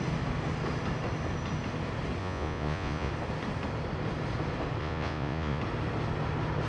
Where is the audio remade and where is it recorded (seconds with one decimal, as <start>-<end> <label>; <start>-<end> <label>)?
0.0-2.2 recorded; 2.2-3.1 remade; 3.1-4.8 recorded; 4.8-5.6 remade; 5.6-6.7 recorded